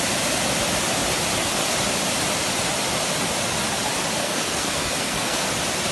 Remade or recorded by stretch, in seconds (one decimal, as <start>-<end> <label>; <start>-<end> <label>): 0.0-4.2 recorded; 4.2-5.5 remade; 5.5-5.9 recorded